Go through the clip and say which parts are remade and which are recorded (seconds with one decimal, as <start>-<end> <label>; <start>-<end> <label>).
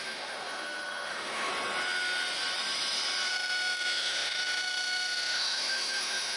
0.0-1.5 remade; 1.5-3.3 recorded; 3.3-6.4 remade